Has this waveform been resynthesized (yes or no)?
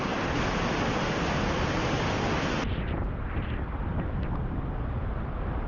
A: no